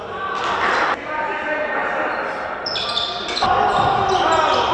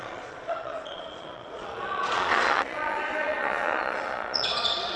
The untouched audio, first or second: first